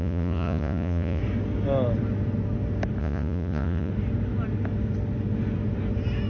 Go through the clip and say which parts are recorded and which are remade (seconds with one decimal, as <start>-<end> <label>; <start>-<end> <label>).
0.0-1.2 remade; 1.2-3.0 recorded; 3.0-3.9 remade; 3.9-6.3 recorded